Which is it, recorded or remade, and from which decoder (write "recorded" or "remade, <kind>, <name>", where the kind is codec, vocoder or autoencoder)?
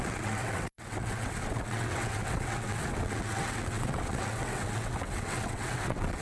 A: remade, vocoder, WaveNeXt